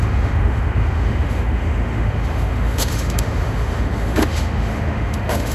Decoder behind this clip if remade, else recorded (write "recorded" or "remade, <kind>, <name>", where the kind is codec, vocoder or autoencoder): remade, autoencoder, DAC-VAE